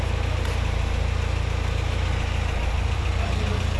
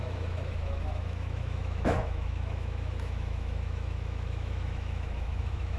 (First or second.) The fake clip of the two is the second